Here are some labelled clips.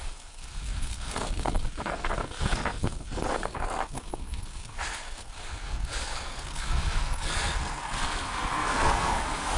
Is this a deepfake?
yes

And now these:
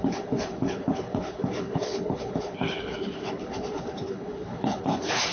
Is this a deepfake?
yes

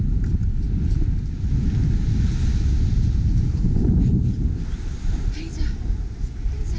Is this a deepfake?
yes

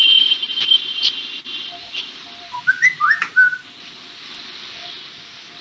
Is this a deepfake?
no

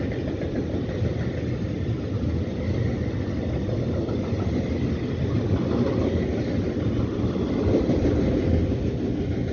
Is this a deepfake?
no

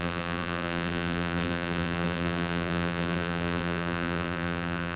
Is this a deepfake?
yes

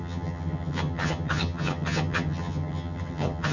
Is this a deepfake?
yes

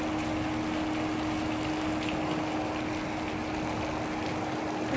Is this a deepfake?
no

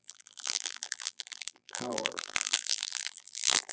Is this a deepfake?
yes